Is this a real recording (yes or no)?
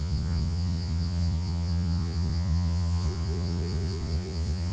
no